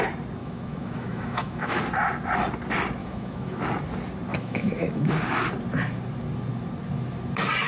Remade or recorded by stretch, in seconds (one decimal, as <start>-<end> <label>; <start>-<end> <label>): 0.0-0.4 recorded; 0.4-1.8 remade; 1.8-3.0 recorded; 3.0-3.6 remade; 3.6-4.3 recorded; 4.3-5.1 remade; 5.1-7.7 recorded